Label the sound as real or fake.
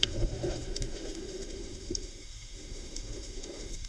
fake